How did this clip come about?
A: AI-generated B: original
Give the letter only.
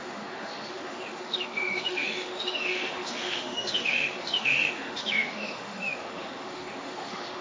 A